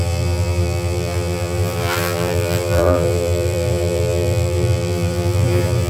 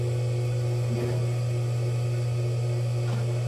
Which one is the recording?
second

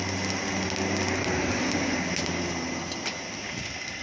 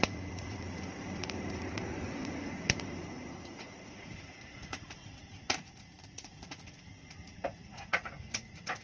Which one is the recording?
first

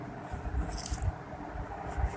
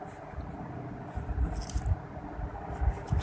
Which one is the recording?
first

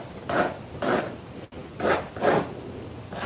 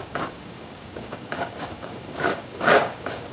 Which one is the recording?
first